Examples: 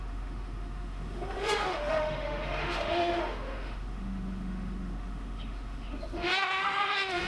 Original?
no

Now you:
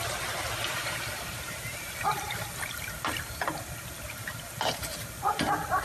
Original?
no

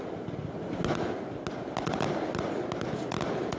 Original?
yes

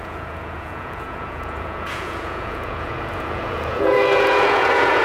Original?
no